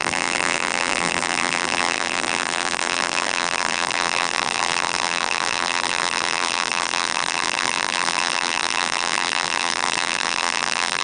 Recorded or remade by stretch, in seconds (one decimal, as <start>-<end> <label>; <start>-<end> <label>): 0.0-11.0 remade